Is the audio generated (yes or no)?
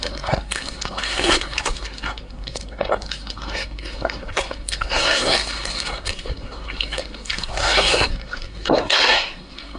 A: yes